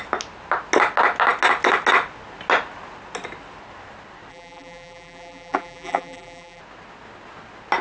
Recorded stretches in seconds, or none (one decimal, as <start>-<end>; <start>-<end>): 0.0-4.3; 6.6-7.8